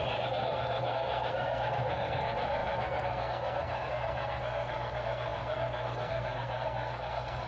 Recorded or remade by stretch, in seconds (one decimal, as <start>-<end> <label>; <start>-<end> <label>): 0.0-7.5 remade